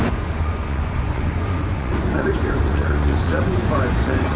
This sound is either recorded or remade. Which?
remade